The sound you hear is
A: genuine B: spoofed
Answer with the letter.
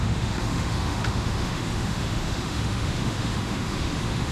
B